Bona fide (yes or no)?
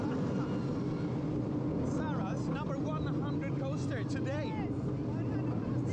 yes